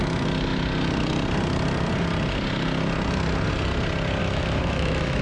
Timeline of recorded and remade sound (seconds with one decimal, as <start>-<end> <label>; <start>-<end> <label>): 0.0-4.2 recorded; 4.2-5.2 remade